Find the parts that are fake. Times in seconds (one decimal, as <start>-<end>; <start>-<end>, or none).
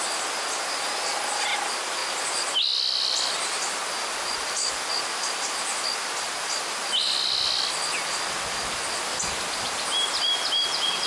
none